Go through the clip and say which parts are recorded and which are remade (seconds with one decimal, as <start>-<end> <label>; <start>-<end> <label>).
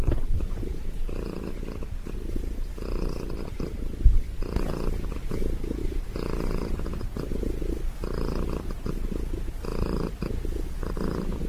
0.0-11.5 recorded